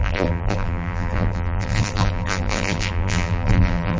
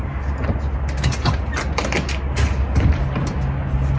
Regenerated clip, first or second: first